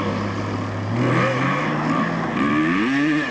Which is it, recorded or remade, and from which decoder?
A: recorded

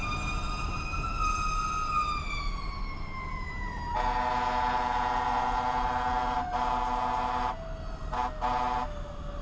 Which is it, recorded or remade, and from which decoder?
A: recorded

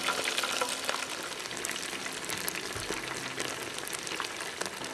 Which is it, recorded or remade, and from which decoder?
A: recorded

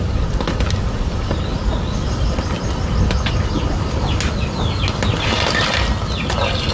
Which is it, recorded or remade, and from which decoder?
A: recorded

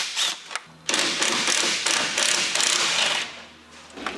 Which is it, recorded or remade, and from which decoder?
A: recorded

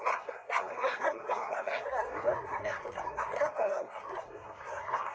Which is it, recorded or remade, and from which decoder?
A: remade, codec, SNAC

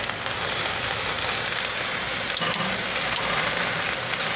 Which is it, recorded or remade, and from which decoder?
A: recorded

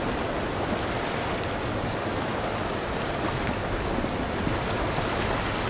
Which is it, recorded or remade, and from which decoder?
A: recorded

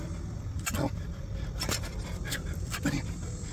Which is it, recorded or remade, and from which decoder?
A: remade, vocoder, BigVGAN v2